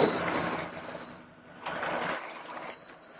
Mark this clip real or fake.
real